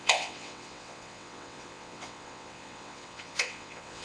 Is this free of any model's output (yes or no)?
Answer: no